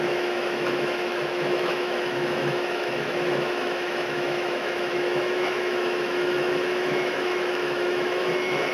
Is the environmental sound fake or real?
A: fake